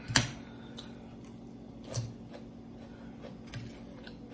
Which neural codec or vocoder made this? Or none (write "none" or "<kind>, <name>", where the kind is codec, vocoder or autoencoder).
none